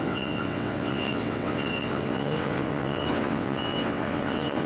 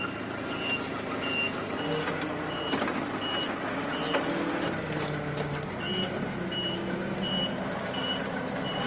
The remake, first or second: first